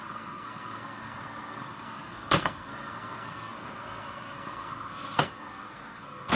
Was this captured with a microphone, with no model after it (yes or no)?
no